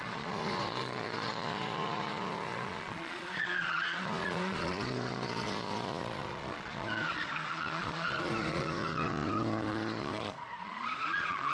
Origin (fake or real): fake